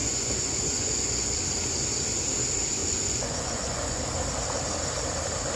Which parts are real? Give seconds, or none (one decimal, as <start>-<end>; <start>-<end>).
1.4-2.8; 4.0-5.6